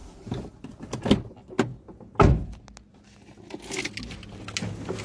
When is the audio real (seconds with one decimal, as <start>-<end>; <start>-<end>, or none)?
1.1-5.0